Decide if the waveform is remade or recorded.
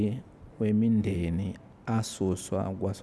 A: recorded